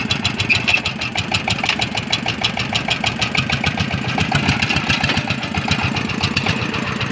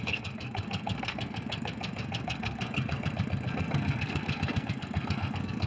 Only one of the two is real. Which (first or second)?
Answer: first